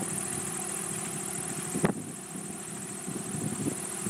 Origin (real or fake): real